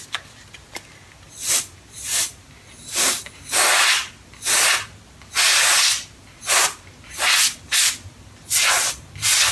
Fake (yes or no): no